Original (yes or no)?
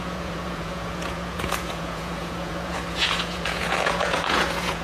no